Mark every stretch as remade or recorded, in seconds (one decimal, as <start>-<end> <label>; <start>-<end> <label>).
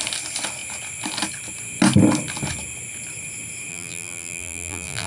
0.0-3.7 recorded; 3.7-5.1 remade